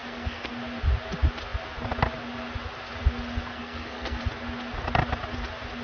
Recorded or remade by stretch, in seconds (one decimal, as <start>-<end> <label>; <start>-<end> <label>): 0.0-0.5 remade; 0.5-3.5 recorded; 3.5-4.2 remade; 4.2-5.8 recorded